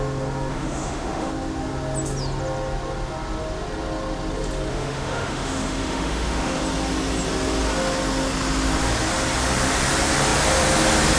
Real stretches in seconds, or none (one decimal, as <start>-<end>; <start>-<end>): 0.0-0.5; 1.3-4.7; 6.6-11.2

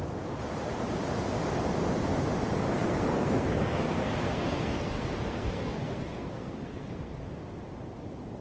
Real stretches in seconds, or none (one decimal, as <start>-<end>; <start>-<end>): 0.0-2.7; 7.2-8.4

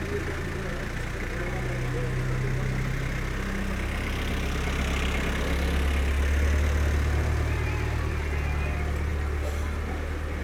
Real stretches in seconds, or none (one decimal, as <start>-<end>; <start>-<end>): 0.0-10.4

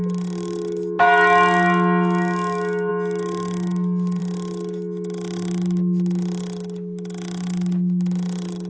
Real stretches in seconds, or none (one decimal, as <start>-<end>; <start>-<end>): 0.0-8.7

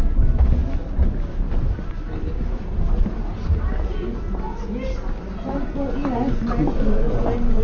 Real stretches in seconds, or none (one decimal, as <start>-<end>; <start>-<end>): 0.0-7.6

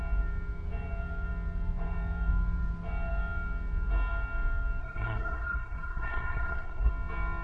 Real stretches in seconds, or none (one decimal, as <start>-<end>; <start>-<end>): 0.0-4.8; 6.9-7.4